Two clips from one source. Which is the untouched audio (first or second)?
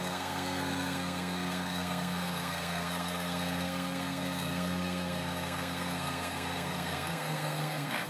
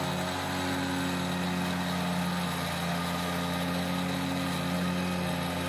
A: second